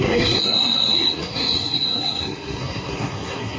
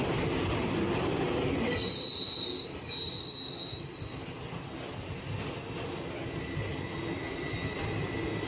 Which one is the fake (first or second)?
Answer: first